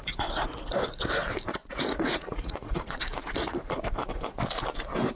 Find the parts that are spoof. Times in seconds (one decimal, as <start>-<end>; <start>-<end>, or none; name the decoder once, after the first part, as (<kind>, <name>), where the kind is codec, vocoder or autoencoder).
1.6-3.0 (vocoder, Vocos)